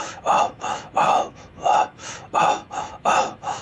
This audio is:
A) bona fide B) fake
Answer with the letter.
B